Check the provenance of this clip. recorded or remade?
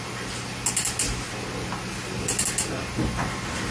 recorded